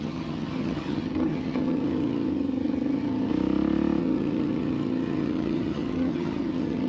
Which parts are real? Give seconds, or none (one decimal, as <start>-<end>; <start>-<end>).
3.3-4.0